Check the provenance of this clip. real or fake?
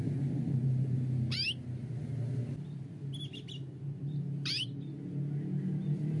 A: real